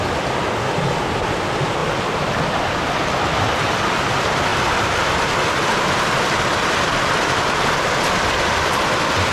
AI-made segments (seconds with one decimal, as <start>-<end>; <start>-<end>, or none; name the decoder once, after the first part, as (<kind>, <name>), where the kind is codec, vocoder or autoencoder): none